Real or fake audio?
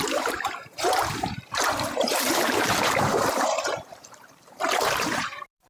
fake